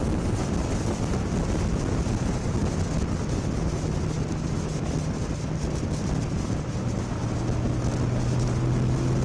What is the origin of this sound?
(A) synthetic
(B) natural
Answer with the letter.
B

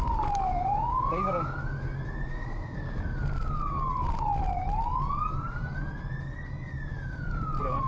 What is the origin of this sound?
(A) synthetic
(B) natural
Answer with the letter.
B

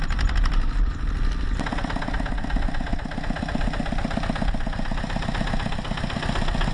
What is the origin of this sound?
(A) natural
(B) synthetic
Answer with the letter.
A